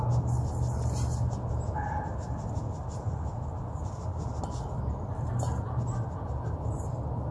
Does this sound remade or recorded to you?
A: recorded